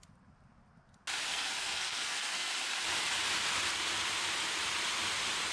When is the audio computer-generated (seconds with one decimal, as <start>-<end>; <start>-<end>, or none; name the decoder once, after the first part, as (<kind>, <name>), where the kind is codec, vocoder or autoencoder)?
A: 1.3-2.5 (codec, SNAC)